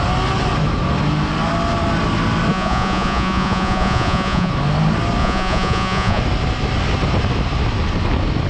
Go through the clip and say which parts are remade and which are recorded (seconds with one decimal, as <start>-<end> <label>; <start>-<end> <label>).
0.0-2.5 recorded; 2.5-4.5 remade; 4.5-5.2 recorded; 5.2-6.2 remade; 6.2-8.5 recorded

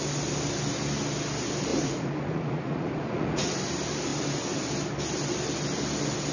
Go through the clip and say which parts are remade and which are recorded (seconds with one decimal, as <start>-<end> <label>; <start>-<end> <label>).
0.0-1.7 recorded; 1.7-3.5 remade; 3.5-6.3 recorded

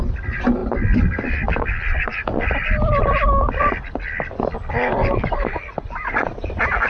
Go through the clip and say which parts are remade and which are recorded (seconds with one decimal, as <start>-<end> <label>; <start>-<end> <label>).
0.0-6.9 recorded

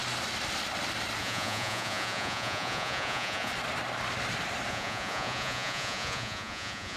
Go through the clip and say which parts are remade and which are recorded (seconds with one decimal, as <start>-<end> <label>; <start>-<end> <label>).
0.0-1.2 recorded; 1.2-3.5 remade; 3.5-4.7 recorded; 4.7-7.0 remade